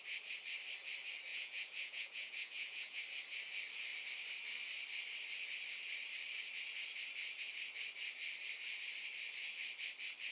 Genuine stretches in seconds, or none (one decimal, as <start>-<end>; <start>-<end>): 0.0-1.3; 3.0-10.3